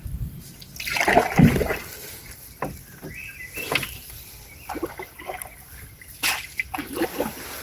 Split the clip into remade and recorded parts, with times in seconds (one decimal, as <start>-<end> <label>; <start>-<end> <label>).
0.0-7.6 recorded